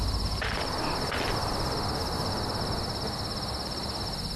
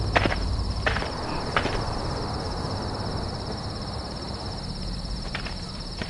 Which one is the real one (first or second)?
first